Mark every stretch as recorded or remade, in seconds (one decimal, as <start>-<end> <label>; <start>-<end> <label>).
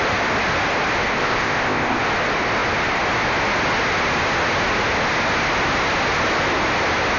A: 0.0-1.2 recorded; 1.2-2.0 remade; 2.0-7.2 recorded